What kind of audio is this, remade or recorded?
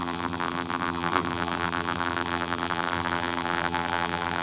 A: remade